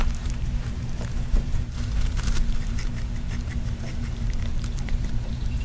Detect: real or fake fake